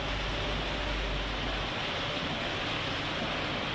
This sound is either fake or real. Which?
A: real